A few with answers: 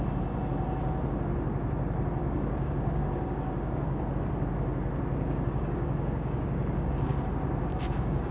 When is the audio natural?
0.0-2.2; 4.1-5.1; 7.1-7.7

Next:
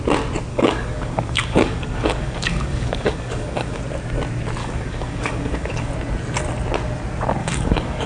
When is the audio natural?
0.0-0.5; 3.8-4.6; 5.9-7.4

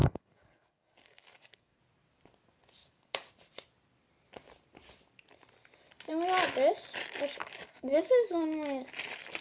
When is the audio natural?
1.8-2.8; 3.3-7.4; 8.9-9.4

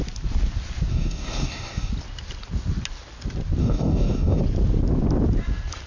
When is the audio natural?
0.0-0.9; 1.9-3.6; 4.4-5.9

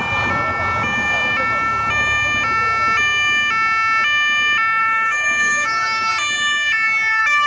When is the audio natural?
0.0-4.8; 6.1-7.5

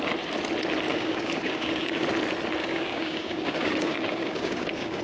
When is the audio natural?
0.0-0.9; 2.0-2.6

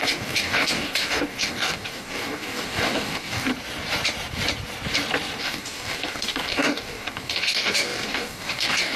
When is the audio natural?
3.5-5.4

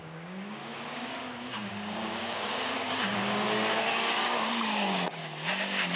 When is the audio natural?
5.2-6.0